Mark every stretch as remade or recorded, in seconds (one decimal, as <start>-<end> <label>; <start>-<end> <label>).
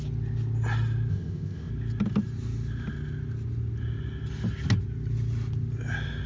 0.0-1.1 recorded; 1.1-1.7 remade; 1.7-6.3 recorded